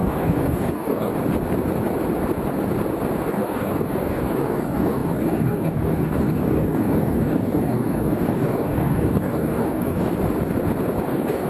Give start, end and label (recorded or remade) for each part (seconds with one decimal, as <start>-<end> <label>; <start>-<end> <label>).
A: 0.0-1.1 remade; 1.1-3.3 recorded; 3.3-10.1 remade; 10.1-11.0 recorded; 11.0-11.5 remade